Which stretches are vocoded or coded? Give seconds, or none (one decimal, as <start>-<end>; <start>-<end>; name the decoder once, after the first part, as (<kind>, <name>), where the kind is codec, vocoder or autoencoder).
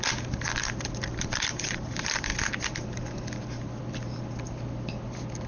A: 0.0-2.3 (vocoder, BigVGAN v2); 3.4-3.8